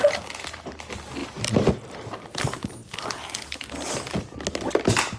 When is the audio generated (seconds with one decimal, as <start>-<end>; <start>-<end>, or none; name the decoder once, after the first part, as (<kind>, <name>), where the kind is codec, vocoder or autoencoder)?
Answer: none